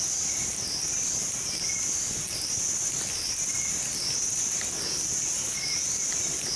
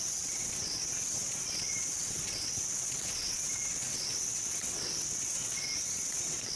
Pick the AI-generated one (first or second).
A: second